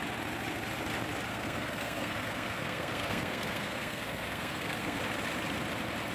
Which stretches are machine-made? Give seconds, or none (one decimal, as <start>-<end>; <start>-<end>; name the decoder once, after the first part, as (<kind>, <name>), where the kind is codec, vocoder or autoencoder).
1.3-5.0 (codec, SNAC)